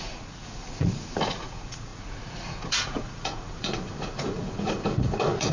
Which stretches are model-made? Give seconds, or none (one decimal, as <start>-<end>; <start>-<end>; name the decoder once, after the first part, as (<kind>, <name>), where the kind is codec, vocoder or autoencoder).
0.0-5.5 (vocoder, Vocos)